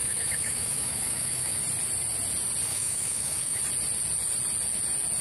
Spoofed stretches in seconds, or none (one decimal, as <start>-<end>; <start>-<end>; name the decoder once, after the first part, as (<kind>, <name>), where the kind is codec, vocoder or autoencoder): 0.0-1.6 (autoencoder, DAC-VAE); 2.7-3.6